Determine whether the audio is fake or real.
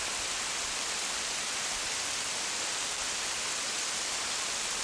real